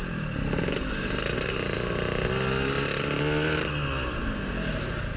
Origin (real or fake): real